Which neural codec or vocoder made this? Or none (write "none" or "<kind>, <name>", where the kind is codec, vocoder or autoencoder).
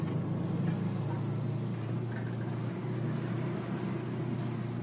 none